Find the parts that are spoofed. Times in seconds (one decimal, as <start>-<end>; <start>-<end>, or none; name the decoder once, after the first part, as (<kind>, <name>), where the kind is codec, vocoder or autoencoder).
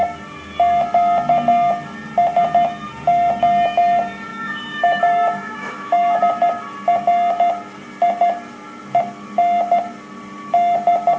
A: 4.3-6.2 (autoencoder, DAC-VAE)